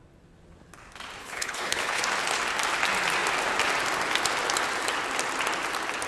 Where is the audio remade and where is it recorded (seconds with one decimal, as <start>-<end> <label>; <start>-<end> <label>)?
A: 0.0-1.2 recorded; 1.2-2.0 remade; 2.0-6.1 recorded